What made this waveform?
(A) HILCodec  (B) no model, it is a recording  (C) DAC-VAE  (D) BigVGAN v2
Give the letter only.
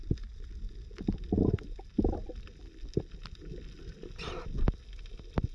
B